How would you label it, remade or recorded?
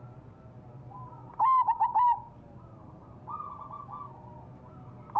recorded